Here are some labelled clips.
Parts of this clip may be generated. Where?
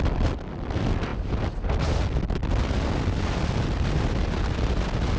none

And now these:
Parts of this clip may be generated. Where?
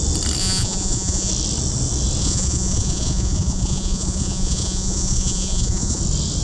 0.4-1.3 (vocoder, Vocos); 2.2-6.0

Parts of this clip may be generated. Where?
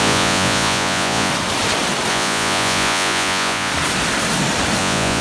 0.0-1.3 (vocoder, Vocos); 2.1-3.7; 4.8-5.2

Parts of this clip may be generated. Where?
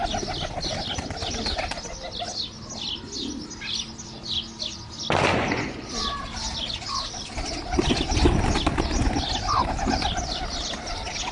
5.3-5.9 (vocoder, Vocos)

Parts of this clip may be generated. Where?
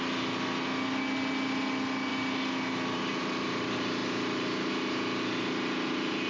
none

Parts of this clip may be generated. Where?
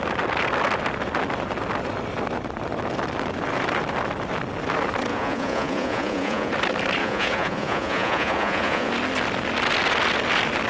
5.1-6.5 (vocoder, Vocos); 7.0-8.9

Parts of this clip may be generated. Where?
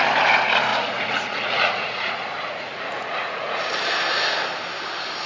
0.7-3.7 (vocoder, Vocos)